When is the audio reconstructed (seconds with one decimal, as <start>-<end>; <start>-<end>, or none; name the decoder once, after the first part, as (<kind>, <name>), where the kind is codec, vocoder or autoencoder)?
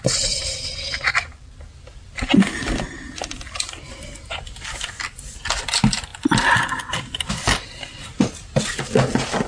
none